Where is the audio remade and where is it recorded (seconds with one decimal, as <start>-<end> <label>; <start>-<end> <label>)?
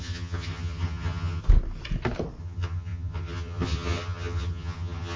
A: 0.0-1.4 remade; 1.4-2.4 recorded; 2.4-5.2 remade